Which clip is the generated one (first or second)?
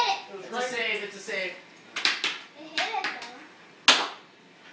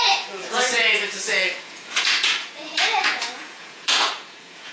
second